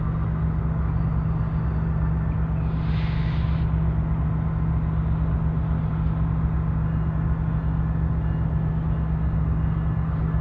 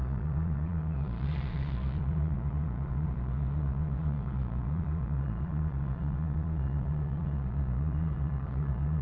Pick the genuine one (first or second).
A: first